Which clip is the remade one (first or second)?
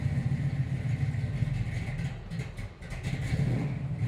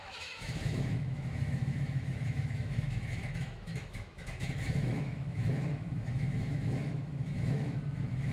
second